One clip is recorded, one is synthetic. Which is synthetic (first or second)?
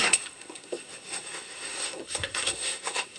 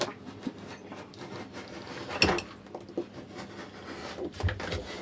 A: first